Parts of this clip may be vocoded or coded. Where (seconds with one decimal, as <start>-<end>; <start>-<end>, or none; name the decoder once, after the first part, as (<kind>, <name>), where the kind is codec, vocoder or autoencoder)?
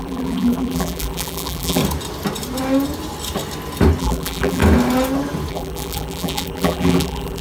0.0-1.8 (vocoder, BigVGAN v2); 4.0-4.6; 5.5-7.4